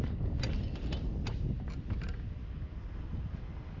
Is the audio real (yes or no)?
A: yes